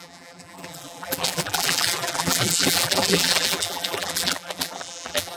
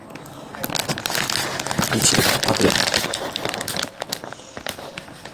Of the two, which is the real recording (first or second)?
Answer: second